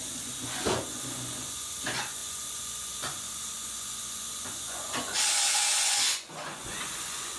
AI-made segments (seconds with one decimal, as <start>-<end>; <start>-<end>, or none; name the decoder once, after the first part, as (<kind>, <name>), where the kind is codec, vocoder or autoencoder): 0.0-7.4 (vocoder, Vocos)

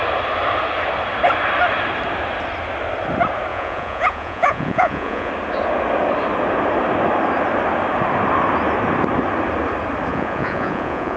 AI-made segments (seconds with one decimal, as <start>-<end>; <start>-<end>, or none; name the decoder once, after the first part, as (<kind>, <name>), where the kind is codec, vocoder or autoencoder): 3.5-5.3 (vocoder, Vocos); 10.1-11.2

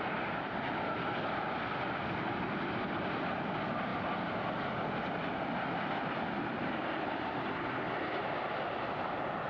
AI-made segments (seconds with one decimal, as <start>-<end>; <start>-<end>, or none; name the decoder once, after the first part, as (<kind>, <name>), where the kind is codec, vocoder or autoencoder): none

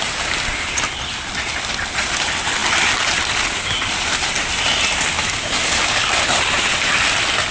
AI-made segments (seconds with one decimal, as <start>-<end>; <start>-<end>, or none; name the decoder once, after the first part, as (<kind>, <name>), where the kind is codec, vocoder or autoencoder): none

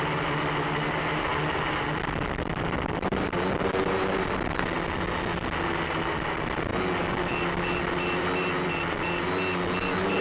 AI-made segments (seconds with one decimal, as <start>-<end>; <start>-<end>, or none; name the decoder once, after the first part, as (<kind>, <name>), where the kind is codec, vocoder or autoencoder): none